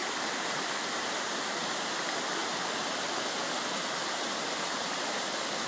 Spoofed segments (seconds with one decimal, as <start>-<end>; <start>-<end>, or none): none